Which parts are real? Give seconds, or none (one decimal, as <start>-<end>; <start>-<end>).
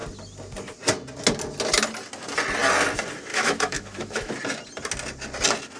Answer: 0.0-3.3; 4.3-5.8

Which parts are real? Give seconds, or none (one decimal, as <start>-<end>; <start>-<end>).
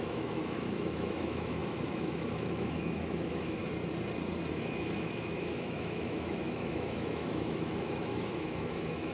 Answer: 3.6-4.5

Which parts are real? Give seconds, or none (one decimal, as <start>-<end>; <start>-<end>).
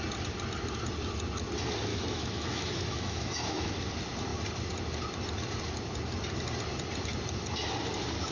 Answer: 0.0-1.9; 3.7-8.3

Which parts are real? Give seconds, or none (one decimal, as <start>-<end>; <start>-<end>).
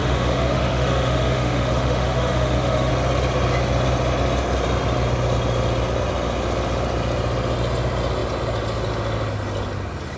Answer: 2.9-10.2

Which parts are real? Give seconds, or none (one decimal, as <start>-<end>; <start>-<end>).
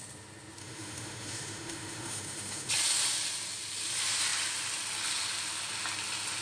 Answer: 0.0-0.6; 2.7-6.4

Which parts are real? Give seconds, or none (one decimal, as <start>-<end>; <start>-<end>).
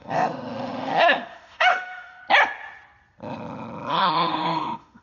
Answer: 2.2-3.9